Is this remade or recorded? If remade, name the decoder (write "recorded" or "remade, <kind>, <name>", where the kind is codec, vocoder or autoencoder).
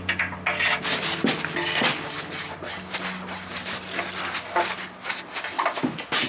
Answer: recorded